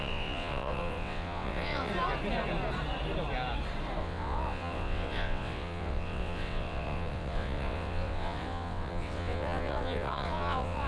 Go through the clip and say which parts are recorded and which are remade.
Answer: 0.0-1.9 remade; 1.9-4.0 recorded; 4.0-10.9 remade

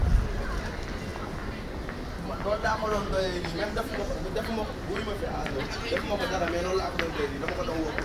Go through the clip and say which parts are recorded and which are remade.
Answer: 0.0-8.0 recorded

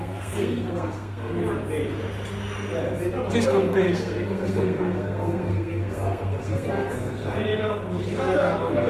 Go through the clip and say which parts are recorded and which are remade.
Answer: 0.0-1.4 remade; 1.4-3.3 recorded; 3.3-8.9 remade

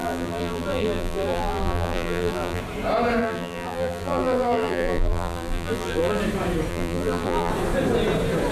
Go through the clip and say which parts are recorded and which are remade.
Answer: 0.0-2.6 remade; 2.6-3.2 recorded; 3.2-6.2 remade; 6.2-6.7 recorded; 6.7-7.5 remade; 7.5-8.5 recorded

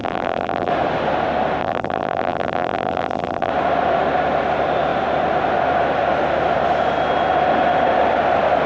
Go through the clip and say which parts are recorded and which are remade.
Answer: 0.0-0.7 remade; 0.7-1.6 recorded; 1.6-3.5 remade; 3.5-8.7 recorded

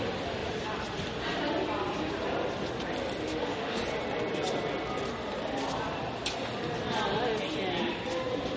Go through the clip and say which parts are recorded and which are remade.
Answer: 0.0-3.2 recorded; 3.2-3.8 remade; 3.8-8.6 recorded

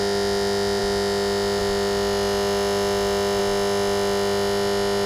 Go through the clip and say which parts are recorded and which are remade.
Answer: 0.0-5.1 recorded

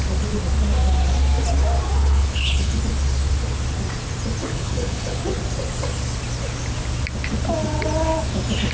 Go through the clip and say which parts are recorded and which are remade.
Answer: 0.0-2.0 recorded; 2.0-2.8 remade; 2.8-4.4 recorded; 4.4-5.2 remade; 5.2-8.7 recorded